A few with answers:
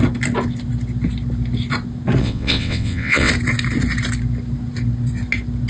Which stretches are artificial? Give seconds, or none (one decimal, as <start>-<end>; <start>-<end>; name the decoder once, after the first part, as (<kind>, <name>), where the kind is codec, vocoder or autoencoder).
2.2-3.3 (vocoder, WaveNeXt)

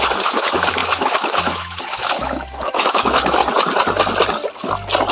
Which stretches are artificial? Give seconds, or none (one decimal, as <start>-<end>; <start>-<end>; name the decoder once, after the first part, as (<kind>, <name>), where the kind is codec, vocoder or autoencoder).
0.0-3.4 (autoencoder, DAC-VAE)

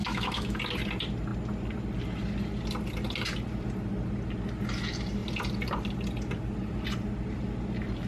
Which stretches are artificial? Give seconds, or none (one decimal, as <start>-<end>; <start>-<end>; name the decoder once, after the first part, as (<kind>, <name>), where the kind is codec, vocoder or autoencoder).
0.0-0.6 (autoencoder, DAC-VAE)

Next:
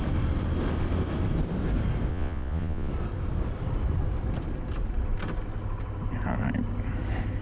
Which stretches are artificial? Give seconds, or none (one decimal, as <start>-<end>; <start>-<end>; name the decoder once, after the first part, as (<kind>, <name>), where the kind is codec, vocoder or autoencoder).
2.1-2.9 (vocoder, Vocos)

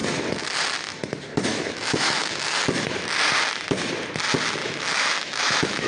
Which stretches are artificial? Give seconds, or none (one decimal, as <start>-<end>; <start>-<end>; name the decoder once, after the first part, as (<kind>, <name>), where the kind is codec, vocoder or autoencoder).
1.5-2.6 (autoencoder, DAC-VAE); 4.6-5.9

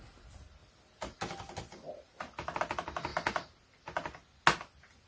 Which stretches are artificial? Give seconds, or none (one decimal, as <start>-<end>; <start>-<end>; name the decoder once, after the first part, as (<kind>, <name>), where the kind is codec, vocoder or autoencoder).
none

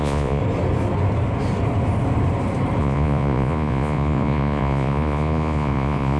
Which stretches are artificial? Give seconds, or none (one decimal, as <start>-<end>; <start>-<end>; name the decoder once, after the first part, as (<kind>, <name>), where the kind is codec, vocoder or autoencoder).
0.0-0.4 (vocoder, Vocos); 2.8-6.2

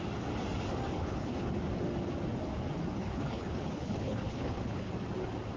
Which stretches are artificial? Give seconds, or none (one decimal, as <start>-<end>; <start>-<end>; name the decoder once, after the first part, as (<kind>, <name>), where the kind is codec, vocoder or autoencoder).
1.0-1.5 (codec, HILCodec); 3.0-4.9